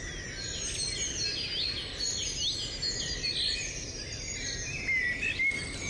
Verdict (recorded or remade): recorded